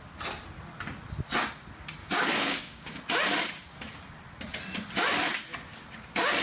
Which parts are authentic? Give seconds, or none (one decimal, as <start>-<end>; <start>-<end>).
0.0-2.0; 3.0-6.4

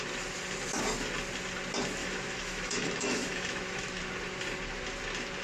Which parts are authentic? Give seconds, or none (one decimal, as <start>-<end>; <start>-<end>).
0.0-2.0; 4.0-5.4

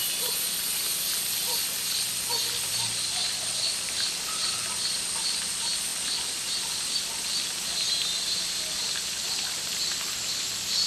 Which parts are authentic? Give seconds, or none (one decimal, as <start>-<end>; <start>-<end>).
0.0-10.9

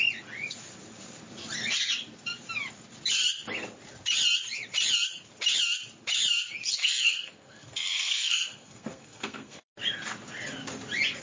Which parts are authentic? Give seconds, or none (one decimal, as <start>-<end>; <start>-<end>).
0.0-6.8; 9.7-11.2

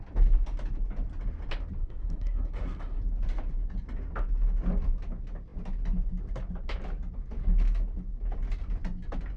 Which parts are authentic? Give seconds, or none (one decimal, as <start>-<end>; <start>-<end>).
0.0-1.8; 3.0-9.4

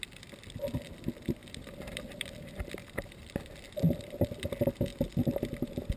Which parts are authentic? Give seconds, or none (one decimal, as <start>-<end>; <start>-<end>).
0.0-1.4; 3.3-6.0

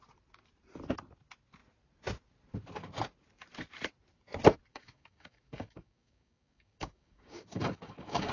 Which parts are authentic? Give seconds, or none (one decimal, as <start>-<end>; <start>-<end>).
0.0-4.7